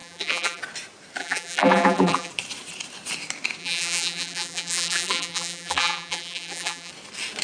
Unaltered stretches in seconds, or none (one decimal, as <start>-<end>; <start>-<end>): 0.6-1.2; 2.3-3.6; 6.9-7.4